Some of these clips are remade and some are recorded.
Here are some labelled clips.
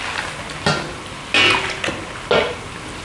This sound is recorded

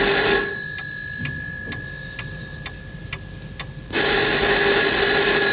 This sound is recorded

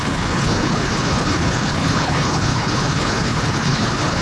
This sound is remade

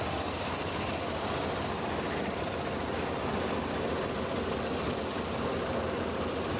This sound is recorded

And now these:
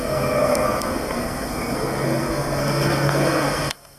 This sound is remade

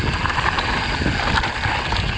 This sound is recorded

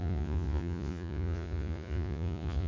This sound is remade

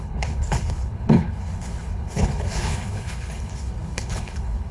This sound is remade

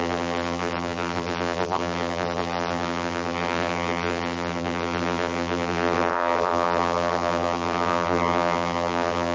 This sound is remade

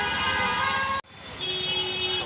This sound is recorded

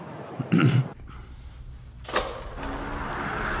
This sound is recorded